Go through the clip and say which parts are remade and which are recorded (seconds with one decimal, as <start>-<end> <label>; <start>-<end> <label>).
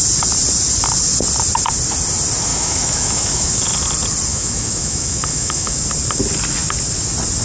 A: 0.0-2.5 recorded; 2.5-3.6 remade; 3.6-4.3 recorded; 4.3-5.8 remade; 5.8-7.4 recorded